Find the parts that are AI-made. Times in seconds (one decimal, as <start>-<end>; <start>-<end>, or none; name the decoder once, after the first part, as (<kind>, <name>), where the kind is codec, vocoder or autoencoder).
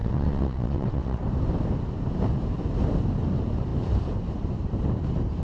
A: 0.0-1.2 (vocoder, WaveNeXt)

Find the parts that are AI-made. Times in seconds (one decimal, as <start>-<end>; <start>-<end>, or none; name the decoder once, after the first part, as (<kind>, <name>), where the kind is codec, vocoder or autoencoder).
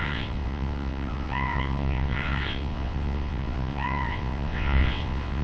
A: 0.0-5.4 (vocoder, WaveNeXt)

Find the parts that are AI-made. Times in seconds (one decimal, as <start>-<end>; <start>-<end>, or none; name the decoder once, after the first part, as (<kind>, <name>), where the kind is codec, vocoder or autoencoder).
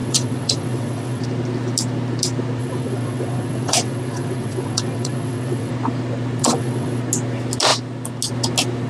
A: 0.0-1.2 (vocoder, WaveNeXt); 2.6-5.7; 6.4-7.0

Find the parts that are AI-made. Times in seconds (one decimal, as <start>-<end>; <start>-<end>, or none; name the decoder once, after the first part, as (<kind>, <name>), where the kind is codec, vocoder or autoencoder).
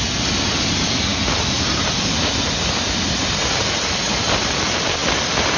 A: none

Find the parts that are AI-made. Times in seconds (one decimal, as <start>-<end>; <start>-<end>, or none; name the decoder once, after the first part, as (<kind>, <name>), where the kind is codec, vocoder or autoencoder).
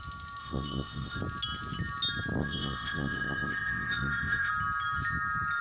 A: 0.4-1.2 (vocoder, WaveNeXt); 2.4-4.5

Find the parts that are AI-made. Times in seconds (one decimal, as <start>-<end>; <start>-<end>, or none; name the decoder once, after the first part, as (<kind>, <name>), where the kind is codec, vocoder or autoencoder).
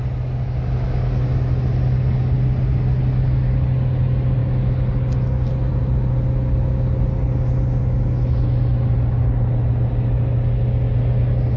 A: none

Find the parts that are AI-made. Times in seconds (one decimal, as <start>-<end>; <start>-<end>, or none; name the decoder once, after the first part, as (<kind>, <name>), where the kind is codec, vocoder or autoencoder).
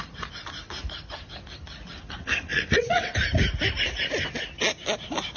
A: 2.5-3.1 (vocoder, WaveNeXt)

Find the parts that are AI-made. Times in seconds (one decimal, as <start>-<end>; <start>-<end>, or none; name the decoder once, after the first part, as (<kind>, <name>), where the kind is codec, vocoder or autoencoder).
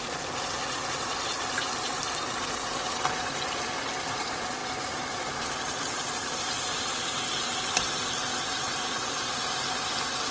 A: none